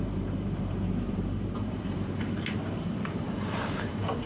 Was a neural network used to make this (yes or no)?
yes